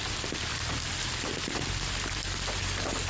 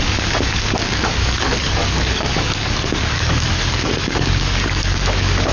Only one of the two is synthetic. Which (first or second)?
second